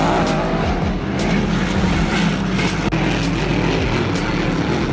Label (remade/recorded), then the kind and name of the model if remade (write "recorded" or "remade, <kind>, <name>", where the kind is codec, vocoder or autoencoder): recorded